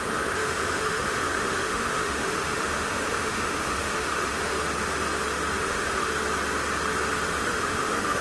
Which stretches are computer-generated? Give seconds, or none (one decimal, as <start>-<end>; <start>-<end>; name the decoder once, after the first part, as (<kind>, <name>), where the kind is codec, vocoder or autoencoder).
0.0-4.5 (autoencoder, DAC-VAE); 5.6-6.1; 7.4-8.2